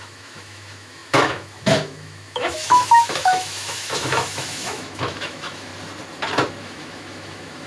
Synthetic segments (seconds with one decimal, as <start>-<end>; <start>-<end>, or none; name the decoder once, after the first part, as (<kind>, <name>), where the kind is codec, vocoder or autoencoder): 0.0-5.7 (autoencoder, DAC-VAE); 6.6-7.7

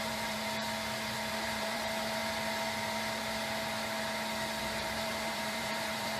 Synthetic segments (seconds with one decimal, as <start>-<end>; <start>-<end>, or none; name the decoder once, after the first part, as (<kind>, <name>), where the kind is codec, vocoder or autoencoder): 0.0-0.6 (vocoder, BigVGAN v2); 1.3-2.2; 4.6-6.2

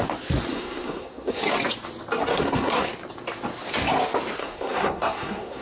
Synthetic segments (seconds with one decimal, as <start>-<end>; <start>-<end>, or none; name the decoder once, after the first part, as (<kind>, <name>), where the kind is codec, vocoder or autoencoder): 0.5-1.4 (codec, SNAC); 2.3-2.9; 4.4-5.6

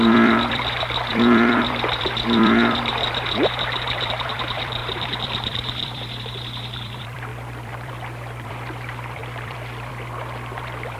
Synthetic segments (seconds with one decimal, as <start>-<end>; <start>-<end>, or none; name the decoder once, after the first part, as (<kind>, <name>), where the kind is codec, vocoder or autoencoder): 0.0-11.0 (vocoder, BigVGAN v2)